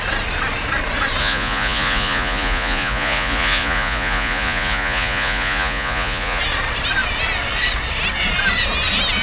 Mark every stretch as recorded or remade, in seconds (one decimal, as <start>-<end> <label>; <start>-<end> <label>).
0.0-1.2 recorded; 1.2-6.4 remade; 6.4-9.2 recorded